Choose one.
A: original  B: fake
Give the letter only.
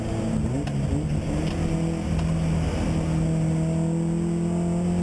A